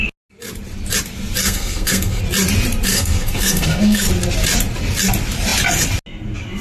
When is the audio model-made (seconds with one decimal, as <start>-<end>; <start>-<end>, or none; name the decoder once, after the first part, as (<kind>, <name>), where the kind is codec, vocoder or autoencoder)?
1.4-2.2 (codec, SNAC); 2.9-4.1